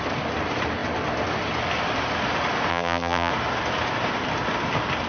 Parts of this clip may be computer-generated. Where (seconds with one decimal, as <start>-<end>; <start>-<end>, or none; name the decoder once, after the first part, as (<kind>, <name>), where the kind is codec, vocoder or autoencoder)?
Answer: 2.7-3.3 (vocoder, BigVGAN v2)